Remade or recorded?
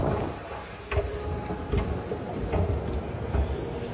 recorded